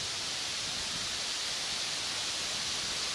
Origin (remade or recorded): recorded